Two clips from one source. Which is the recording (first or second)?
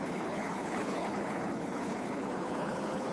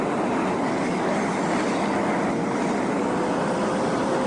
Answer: second